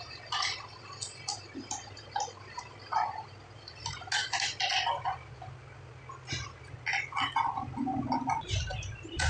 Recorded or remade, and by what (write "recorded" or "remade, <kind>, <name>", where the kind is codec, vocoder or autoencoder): recorded